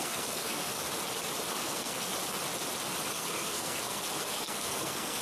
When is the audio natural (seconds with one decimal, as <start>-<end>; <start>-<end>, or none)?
0.8-1.5; 2.1-3.1